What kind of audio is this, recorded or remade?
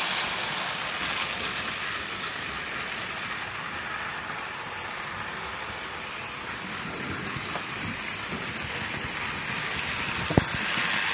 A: recorded